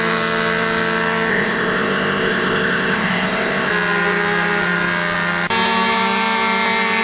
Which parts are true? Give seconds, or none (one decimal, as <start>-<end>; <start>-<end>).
0.0-1.3; 3.7-7.0